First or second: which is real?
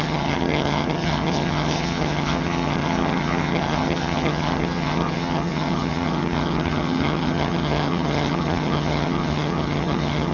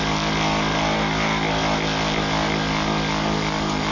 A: second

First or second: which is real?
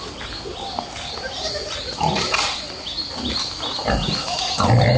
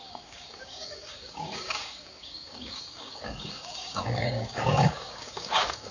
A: first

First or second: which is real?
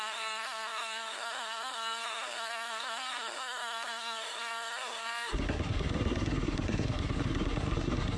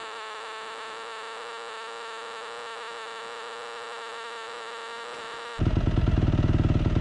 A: second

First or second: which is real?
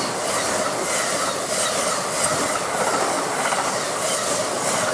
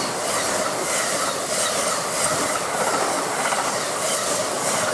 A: first